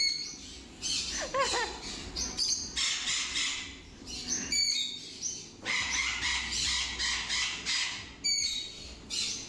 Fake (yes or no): no